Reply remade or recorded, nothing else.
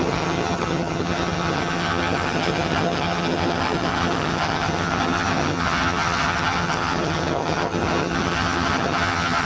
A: remade